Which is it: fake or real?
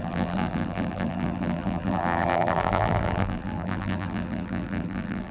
fake